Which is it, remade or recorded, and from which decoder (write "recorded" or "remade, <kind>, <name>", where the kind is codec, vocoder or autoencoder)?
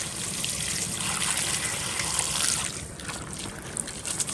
remade, vocoder, BigVGAN v2